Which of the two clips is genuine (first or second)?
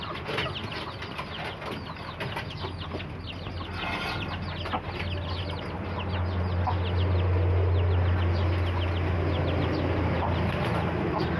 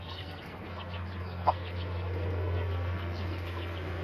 first